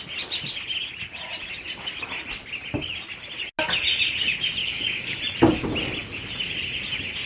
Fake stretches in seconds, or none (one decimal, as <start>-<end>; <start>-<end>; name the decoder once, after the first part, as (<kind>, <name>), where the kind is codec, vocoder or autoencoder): 4.6-5.2 (codec, DAC)